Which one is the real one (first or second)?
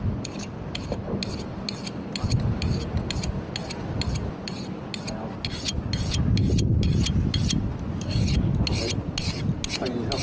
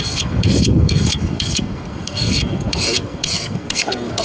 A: first